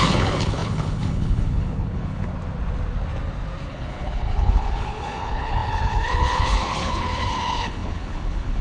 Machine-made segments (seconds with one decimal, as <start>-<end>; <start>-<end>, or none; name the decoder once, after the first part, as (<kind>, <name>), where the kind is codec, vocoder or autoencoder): 0.0-2.3 (codec, HILCodec); 3.6-8.6